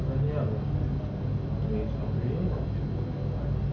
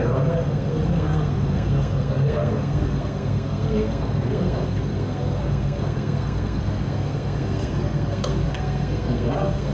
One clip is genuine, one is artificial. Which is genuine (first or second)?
first